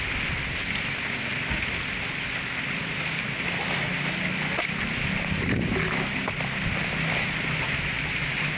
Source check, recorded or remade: recorded